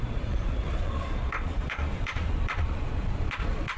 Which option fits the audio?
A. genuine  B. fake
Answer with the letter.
B